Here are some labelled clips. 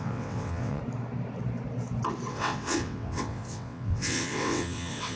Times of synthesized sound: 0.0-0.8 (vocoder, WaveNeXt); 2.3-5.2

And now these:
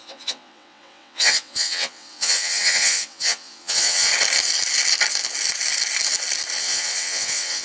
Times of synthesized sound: 0.0-4.1 (vocoder, WaveNeXt); 6.6-7.6

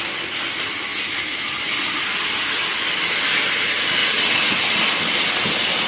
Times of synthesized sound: 4.0-4.6 (vocoder, WaveNeXt)